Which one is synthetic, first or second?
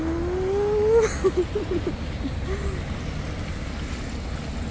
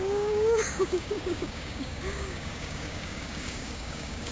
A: second